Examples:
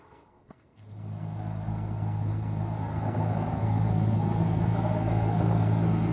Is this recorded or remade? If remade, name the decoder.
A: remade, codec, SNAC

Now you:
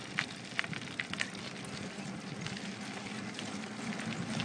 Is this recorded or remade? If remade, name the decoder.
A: recorded